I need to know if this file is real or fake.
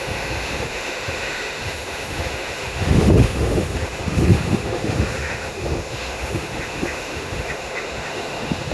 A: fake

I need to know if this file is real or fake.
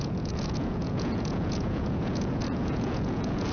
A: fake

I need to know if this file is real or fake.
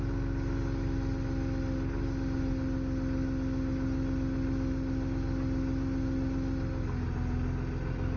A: real